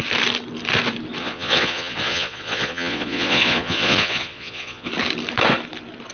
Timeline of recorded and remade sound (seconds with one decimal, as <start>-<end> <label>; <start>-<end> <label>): 0.0-1.2 recorded; 1.2-4.9 remade; 4.9-6.1 recorded